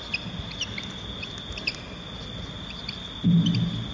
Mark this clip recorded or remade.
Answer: recorded